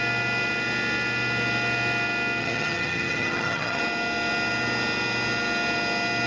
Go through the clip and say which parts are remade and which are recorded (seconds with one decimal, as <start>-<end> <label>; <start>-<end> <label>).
0.0-2.4 recorded; 2.4-3.8 remade; 3.8-6.3 recorded